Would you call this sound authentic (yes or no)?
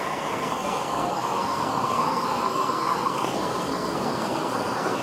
no